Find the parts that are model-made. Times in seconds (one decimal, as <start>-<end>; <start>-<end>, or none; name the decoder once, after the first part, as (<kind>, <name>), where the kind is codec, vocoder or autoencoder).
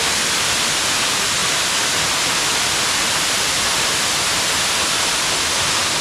none